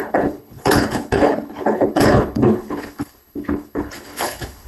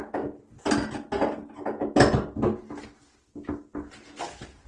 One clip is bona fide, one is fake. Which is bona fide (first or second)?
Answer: second